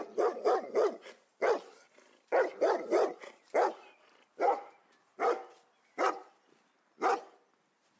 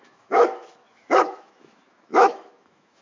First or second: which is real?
first